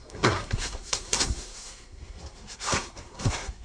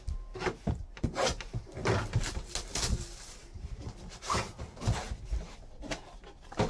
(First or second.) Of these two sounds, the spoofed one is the first